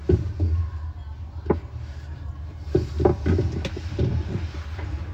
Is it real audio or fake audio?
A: real